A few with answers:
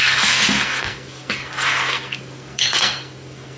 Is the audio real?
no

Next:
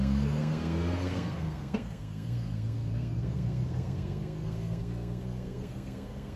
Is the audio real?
no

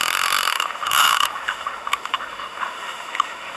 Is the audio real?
no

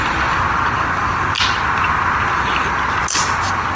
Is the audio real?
yes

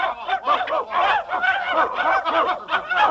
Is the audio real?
yes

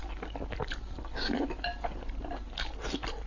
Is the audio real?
yes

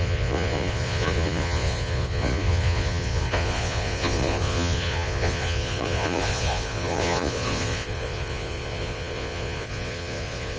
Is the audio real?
no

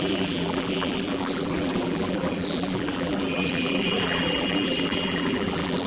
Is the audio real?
no